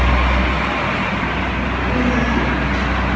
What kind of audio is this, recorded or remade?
recorded